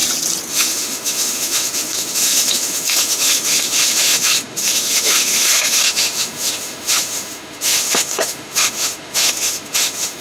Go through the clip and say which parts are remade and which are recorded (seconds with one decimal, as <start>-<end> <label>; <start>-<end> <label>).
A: 0.0-0.5 recorded; 0.5-10.2 remade